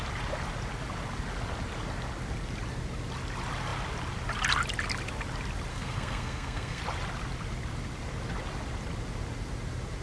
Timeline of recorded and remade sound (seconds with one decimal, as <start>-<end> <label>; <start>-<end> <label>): 0.0-5.7 recorded; 5.7-6.8 remade; 6.8-10.0 recorded